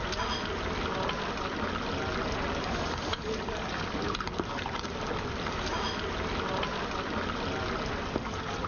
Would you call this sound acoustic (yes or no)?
yes